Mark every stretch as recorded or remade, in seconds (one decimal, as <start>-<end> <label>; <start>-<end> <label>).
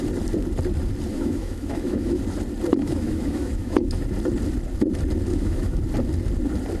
0.0-1.1 recorded; 1.1-2.2 remade; 2.2-2.7 recorded; 2.7-4.0 remade; 4.0-5.3 recorded; 5.3-5.8 remade; 5.8-6.8 recorded